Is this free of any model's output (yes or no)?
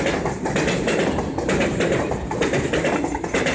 yes